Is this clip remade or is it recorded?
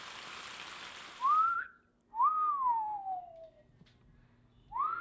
recorded